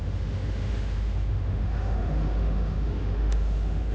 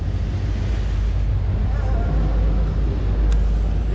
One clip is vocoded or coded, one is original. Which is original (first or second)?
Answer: second